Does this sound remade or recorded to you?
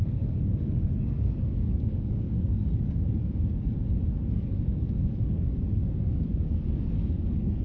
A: remade